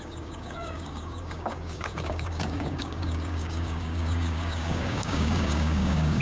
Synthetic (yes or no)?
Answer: yes